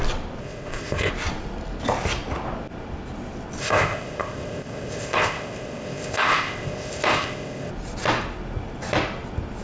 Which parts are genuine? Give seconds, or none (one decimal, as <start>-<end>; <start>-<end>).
0.0-0.4; 1.1-3.6; 7.7-9.6